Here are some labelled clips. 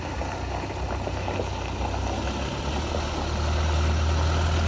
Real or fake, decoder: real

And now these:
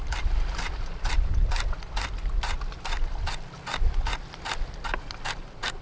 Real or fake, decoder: real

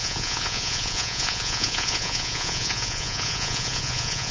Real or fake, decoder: fake, vocoder, Vocos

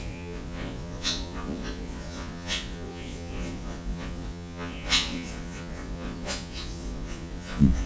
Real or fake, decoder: fake, vocoder, Vocos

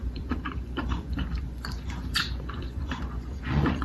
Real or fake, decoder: fake, vocoder, Vocos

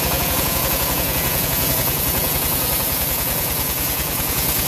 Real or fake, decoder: fake, vocoder, Vocos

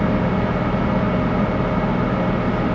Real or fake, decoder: real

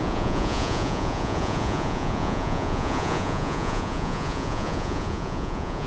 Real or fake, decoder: fake, vocoder, Vocos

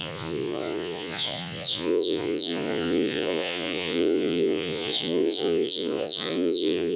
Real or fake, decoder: fake, vocoder, Vocos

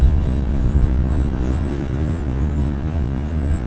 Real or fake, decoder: fake, vocoder, Vocos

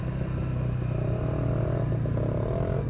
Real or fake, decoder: real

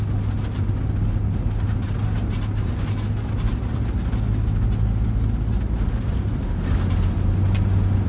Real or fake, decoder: real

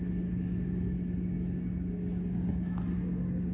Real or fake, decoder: real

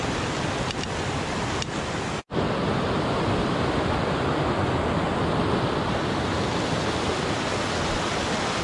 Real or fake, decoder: real